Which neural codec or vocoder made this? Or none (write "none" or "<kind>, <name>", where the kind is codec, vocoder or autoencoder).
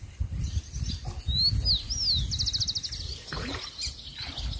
none